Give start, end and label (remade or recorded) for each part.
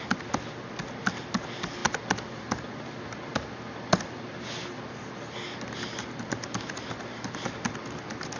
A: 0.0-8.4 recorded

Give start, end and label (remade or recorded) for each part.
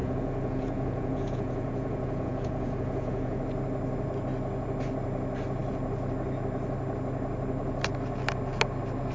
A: 0.0-3.4 remade; 3.4-9.1 recorded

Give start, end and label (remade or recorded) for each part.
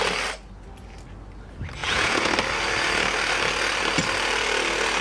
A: 0.0-1.8 recorded; 1.8-2.3 remade; 2.3-5.0 recorded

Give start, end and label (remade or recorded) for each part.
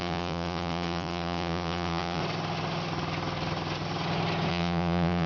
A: 0.0-2.2 remade; 2.2-4.5 recorded; 4.5-5.3 remade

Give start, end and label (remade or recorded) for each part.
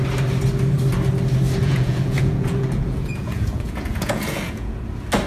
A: 0.0-1.6 recorded; 1.6-4.8 remade; 4.8-5.3 recorded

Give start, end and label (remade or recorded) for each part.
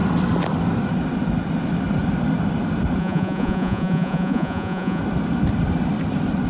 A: 0.0-3.0 recorded; 3.0-5.0 remade; 5.0-6.5 recorded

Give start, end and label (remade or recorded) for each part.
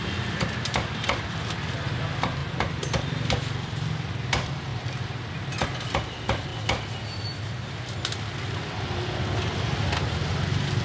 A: 0.0-10.8 recorded